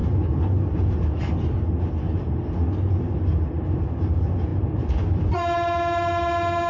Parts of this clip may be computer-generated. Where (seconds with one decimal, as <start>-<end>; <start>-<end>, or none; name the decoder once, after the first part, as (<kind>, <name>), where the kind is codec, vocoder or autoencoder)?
none